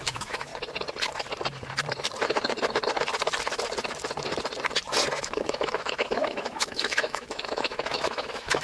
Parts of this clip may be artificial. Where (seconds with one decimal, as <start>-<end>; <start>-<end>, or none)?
0.0-0.5; 5.2-8.6